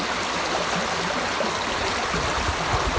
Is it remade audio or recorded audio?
remade